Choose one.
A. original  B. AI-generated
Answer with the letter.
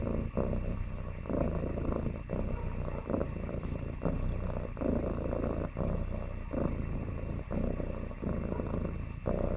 B